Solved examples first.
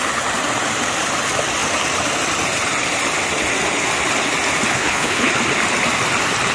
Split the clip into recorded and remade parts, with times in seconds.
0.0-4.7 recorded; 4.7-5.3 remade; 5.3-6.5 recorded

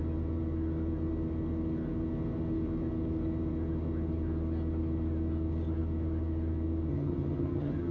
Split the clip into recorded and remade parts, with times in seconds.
0.0-6.9 recorded; 6.9-7.9 remade

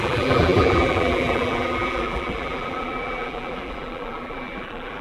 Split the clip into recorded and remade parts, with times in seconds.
0.0-5.0 remade

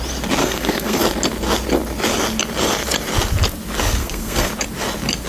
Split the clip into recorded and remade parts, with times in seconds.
0.0-0.4 recorded; 0.4-1.0 remade; 1.0-4.0 recorded; 4.0-4.5 remade; 4.5-5.3 recorded

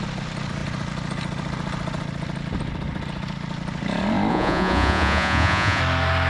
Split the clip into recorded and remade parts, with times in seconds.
0.0-4.3 recorded; 4.3-5.8 remade; 5.8-6.3 recorded

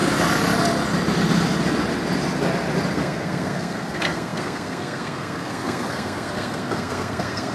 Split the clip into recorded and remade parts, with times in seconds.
0.0-2.9 recorded; 2.9-7.5 remade

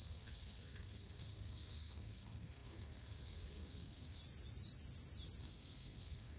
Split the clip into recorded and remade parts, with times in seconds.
0.0-4.2 remade; 4.2-5.4 recorded; 5.4-6.4 remade